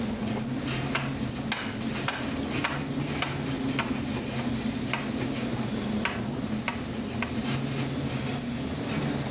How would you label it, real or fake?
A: real